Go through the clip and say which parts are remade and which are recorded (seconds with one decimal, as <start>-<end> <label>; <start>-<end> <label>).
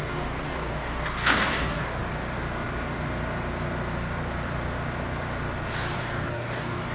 0.0-2.0 remade; 2.0-6.0 recorded; 6.0-6.9 remade